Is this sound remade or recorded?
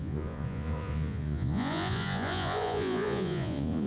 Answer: remade